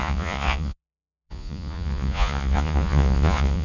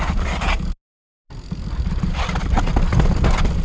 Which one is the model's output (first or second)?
first